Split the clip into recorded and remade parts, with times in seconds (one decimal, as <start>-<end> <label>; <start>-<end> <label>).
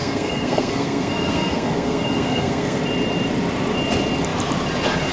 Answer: 0.0-2.8 remade; 2.8-5.1 recorded